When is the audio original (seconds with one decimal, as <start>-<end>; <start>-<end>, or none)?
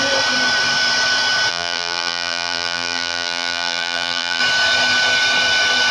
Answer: 0.0-1.5; 4.4-5.9